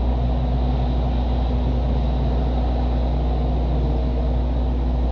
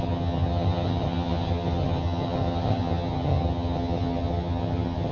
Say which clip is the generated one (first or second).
second